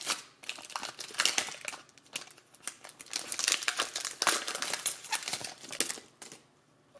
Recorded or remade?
recorded